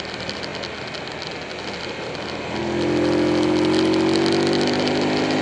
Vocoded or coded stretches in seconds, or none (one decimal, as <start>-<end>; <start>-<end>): none